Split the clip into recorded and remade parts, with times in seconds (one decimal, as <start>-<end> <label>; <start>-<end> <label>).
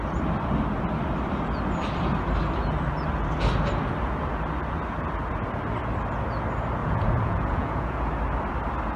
0.0-6.8 recorded; 6.8-8.1 remade; 8.1-9.0 recorded